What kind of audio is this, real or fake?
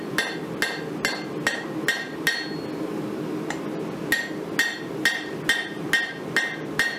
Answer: real